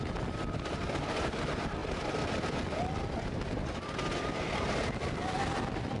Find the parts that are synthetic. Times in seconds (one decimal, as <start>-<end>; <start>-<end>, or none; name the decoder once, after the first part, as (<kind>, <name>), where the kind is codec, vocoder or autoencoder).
none